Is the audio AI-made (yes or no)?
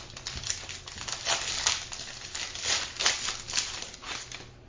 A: no